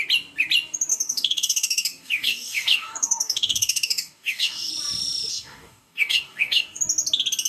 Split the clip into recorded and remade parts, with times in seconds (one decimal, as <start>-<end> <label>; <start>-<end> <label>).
0.0-0.9 recorded; 0.9-4.7 remade; 4.7-5.3 recorded; 5.3-6.8 remade; 6.8-7.5 recorded